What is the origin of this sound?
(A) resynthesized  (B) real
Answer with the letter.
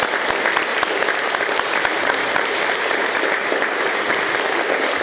B